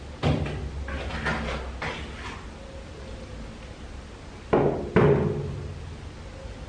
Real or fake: real